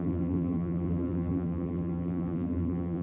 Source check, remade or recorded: remade